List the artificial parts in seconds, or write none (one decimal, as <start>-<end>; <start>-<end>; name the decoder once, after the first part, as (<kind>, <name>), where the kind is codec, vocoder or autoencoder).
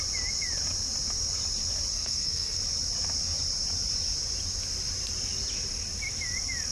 1.9-2.6 (codec, SNAC)